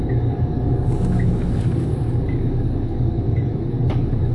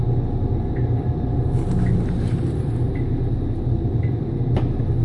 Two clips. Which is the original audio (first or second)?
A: second